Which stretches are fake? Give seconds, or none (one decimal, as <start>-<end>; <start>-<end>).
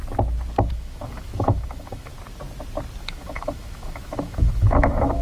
0.7-2.1; 3.0-5.2